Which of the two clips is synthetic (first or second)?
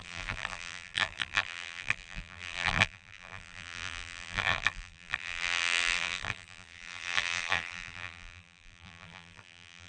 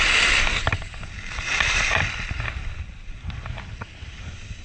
first